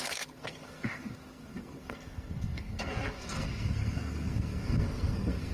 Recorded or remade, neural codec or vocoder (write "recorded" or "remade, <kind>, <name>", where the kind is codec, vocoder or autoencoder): remade, codec, SNAC